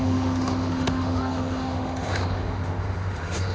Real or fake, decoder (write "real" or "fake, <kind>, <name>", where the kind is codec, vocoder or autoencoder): fake, autoencoder, DAC-VAE